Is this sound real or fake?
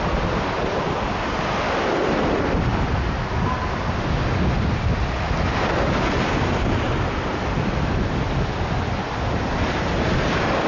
real